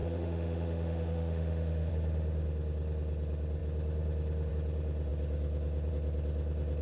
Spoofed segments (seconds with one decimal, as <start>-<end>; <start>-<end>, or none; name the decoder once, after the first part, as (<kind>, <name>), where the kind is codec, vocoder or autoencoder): 0.0-1.9 (autoencoder, DAC-VAE)